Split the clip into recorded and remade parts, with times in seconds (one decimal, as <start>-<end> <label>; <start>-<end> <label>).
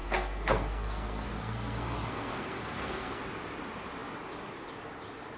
0.0-3.2 remade; 3.2-5.4 recorded